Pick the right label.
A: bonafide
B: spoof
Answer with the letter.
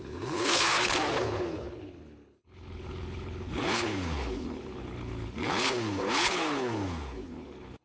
B